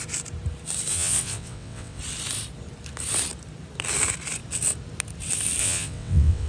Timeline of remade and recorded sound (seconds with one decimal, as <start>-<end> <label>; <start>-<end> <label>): 0.0-0.9 recorded; 0.9-2.0 remade; 2.0-5.6 recorded; 5.6-6.5 remade